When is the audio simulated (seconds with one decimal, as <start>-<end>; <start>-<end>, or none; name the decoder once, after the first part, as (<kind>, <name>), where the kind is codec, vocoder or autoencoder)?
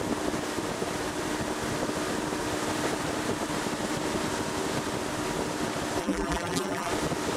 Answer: 6.0-6.9 (vocoder, BigVGAN v2)